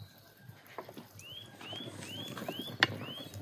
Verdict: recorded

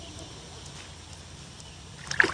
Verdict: recorded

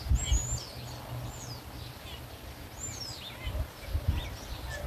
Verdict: recorded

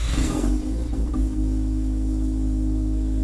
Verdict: remade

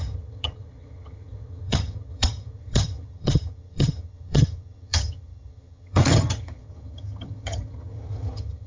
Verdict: remade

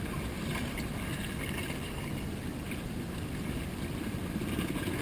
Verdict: recorded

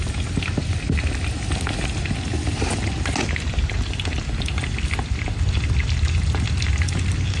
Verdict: recorded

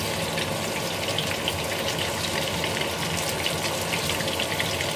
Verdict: recorded